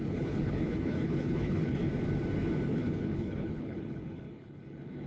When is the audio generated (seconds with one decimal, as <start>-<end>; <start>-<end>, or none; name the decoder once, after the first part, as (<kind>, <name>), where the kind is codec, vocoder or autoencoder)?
0.0-1.8 (codec, HILCodec); 2.7-5.1